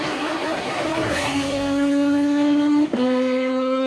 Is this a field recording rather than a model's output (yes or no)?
no